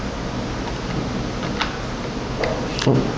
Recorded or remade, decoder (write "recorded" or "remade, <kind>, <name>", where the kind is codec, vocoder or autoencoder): recorded